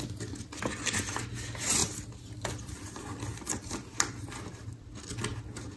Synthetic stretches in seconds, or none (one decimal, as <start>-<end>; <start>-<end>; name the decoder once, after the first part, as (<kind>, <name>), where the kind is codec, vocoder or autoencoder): 1.8-5.0 (vocoder, BigVGAN v2)